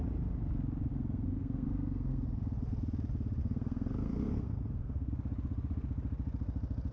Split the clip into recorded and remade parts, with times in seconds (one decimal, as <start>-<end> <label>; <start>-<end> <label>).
0.0-0.9 recorded; 0.9-2.4 remade; 2.4-3.4 recorded; 3.4-5.1 remade; 5.1-6.9 recorded